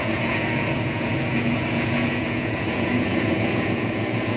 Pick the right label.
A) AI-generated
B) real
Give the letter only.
A